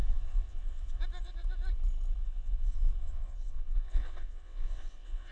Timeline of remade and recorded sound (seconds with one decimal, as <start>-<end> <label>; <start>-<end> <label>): 0.0-1.0 remade; 1.0-2.2 recorded; 2.2-5.3 remade